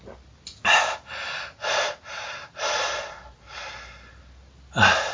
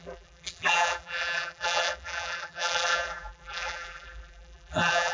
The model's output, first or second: second